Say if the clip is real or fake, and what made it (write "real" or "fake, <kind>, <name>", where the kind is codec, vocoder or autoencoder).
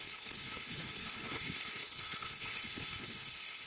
fake, codec, HILCodec